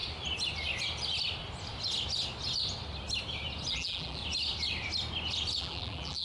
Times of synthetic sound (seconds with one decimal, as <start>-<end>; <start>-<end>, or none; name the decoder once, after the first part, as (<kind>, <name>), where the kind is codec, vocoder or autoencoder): 3.7-4.2 (vocoder, BigVGAN v2); 5.6-6.2